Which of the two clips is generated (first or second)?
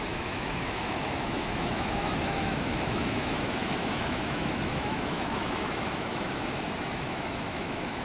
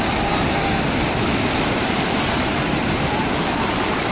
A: first